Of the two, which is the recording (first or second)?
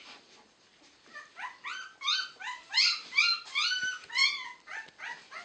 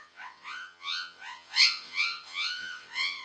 first